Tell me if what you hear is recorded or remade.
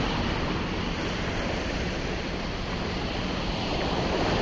recorded